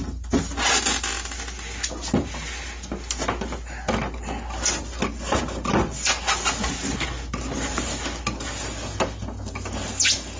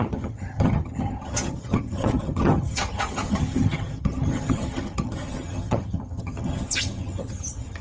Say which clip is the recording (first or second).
first